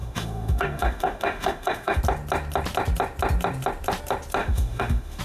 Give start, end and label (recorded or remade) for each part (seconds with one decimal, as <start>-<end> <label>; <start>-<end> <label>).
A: 0.0-2.0 remade; 2.0-4.4 recorded; 4.4-5.2 remade